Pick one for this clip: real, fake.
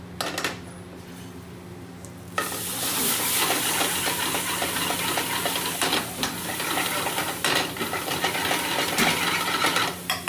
real